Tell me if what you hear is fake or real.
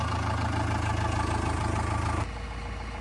real